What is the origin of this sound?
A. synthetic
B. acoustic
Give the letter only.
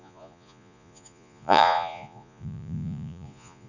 A